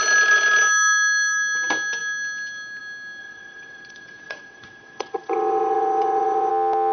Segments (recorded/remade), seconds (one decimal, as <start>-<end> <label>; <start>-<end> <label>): 0.0-3.2 recorded; 3.2-6.5 remade; 6.5-6.9 recorded